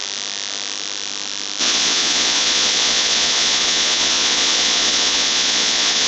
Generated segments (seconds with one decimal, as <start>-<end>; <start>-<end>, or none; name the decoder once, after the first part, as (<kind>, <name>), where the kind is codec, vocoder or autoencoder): 1.6-6.1 (vocoder, Vocos)